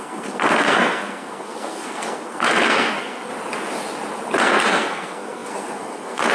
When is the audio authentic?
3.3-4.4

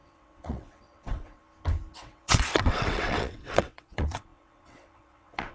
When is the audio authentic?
1.4-1.9

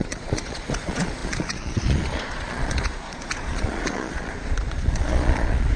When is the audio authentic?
none

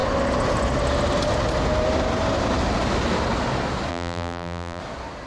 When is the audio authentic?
0.0-3.9; 4.8-5.3

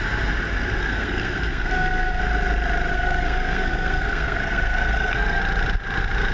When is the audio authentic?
0.0-0.8; 2.2-2.9; 5.4-6.3

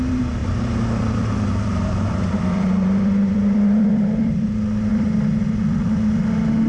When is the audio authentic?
0.0-0.4; 4.3-4.9; 5.4-6.7

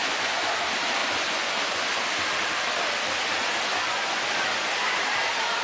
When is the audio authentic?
0.5-1.0; 2.0-3.7; 5.0-5.6

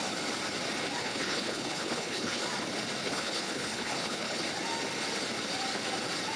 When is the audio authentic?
0.0-1.0; 2.4-3.0; 4.4-6.4